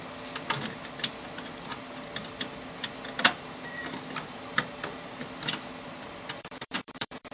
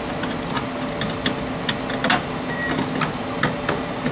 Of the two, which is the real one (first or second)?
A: second